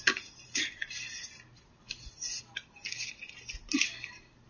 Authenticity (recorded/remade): recorded